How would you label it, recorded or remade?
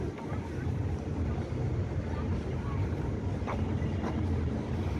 recorded